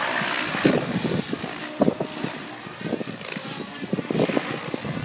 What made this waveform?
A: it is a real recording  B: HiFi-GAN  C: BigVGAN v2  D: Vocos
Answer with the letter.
A